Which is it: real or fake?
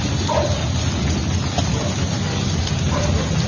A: real